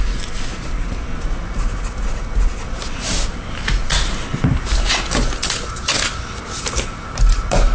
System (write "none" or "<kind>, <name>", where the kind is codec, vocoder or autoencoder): none